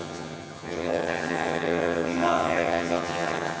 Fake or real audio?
fake